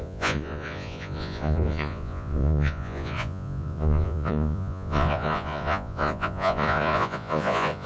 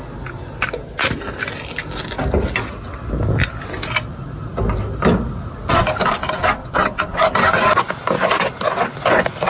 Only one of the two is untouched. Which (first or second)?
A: second